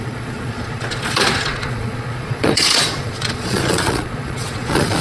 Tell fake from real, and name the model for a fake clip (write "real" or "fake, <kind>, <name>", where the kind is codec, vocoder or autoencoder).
fake, vocoder, Vocos